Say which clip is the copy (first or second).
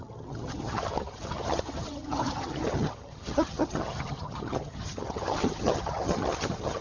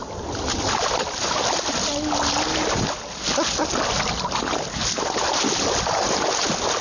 first